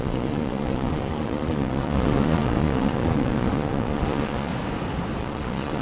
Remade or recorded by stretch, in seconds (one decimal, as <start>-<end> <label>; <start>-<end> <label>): 0.0-4.5 remade; 4.5-5.2 recorded; 5.2-5.8 remade